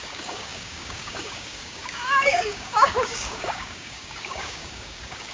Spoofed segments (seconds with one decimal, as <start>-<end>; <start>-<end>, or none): 0.0-5.3